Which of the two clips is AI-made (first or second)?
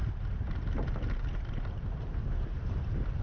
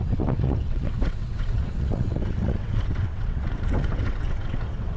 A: second